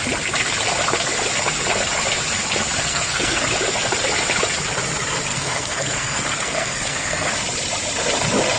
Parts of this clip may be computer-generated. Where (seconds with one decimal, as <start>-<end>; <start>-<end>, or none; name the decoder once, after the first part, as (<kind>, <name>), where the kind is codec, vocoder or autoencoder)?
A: 2.8-3.4 (codec, SNAC); 5.3-7.3